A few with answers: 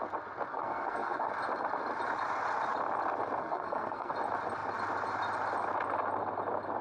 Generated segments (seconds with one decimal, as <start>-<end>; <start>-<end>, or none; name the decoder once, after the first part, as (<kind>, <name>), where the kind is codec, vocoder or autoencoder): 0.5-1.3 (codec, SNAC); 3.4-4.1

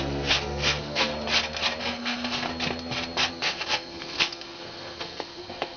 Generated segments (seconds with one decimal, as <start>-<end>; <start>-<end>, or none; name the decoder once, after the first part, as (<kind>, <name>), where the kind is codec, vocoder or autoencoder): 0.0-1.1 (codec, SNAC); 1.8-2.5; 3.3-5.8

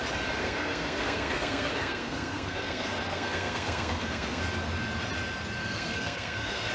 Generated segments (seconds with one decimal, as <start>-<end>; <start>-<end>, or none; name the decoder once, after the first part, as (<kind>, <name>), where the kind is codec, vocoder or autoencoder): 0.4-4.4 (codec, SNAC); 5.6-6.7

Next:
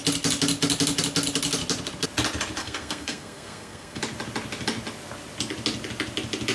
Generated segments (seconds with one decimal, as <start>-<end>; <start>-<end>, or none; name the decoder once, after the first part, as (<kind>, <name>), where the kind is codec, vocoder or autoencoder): 2.6-4.0 (codec, SNAC)